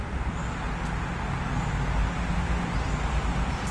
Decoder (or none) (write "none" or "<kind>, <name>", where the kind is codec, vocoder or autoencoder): none